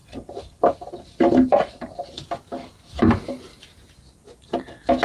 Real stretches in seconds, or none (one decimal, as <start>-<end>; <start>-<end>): 3.0-5.0

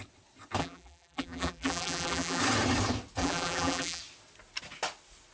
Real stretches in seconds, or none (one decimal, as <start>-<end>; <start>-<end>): 0.0-0.6; 2.4-3.2; 4.0-5.3

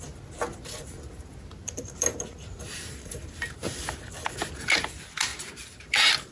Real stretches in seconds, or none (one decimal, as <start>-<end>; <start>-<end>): 0.0-1.6; 3.6-5.3

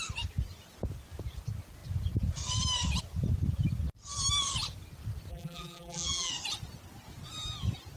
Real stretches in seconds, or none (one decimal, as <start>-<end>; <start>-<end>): 0.0-5.3; 6.3-8.0

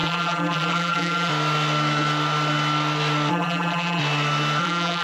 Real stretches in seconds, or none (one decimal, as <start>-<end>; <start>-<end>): 1.3-3.3; 4.0-4.6

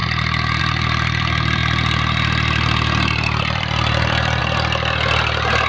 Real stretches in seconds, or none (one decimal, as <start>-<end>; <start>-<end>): 0.0-0.6; 1.6-3.4; 4.4-5.7

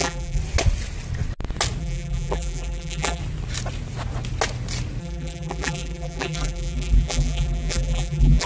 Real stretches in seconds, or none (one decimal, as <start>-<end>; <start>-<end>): 0.4-1.8; 3.2-5.0